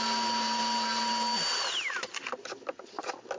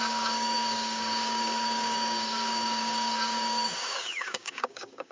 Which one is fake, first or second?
second